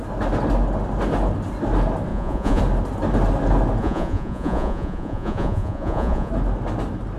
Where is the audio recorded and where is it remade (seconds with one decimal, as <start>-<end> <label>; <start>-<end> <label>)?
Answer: 0.0-2.1 recorded; 2.1-2.6 remade; 2.6-3.8 recorded; 3.8-6.3 remade; 6.3-7.2 recorded